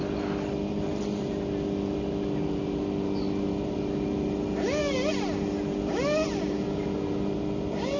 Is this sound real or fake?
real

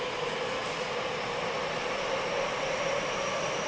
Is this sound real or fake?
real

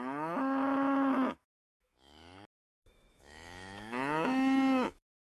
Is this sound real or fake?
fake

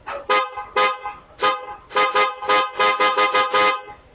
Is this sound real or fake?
real